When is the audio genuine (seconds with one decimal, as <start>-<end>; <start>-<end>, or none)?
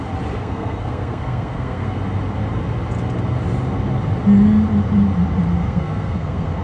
0.0-0.4; 2.0-5.6